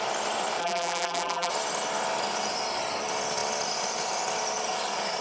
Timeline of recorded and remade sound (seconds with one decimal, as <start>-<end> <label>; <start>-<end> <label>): 0.0-0.6 recorded; 0.6-1.5 remade; 1.5-5.2 recorded